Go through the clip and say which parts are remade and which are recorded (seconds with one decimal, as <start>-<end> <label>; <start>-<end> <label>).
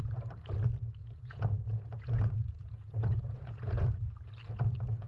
0.0-1.0 recorded; 1.0-4.1 remade; 4.1-5.1 recorded